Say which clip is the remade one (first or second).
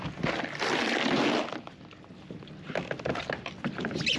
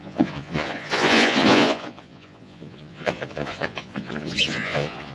second